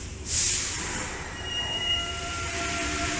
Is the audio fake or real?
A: fake